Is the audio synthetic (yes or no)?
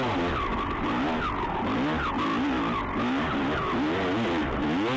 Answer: no